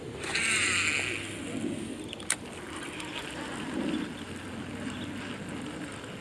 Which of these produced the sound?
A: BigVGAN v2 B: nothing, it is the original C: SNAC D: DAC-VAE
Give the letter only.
B